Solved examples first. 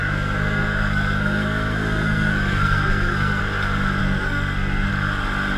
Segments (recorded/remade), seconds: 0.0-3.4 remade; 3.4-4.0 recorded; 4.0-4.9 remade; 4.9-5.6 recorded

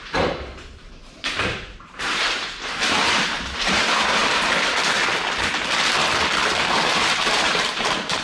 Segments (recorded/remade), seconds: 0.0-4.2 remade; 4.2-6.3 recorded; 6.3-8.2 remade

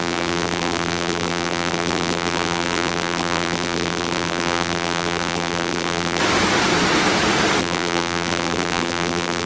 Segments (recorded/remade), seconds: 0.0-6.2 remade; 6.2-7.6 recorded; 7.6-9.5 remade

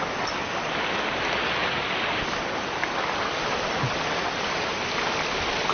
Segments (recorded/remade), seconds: 0.0-5.7 recorded

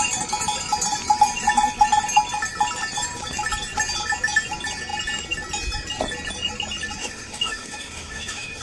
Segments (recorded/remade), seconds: 0.0-7.0 recorded; 7.0-8.6 remade